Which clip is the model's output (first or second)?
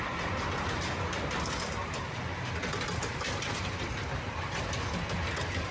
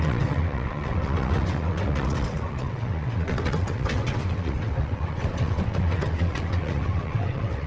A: second